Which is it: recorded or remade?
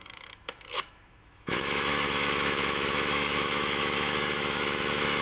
remade